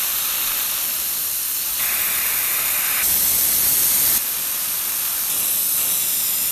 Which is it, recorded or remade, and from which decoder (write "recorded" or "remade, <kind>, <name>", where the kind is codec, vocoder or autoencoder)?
recorded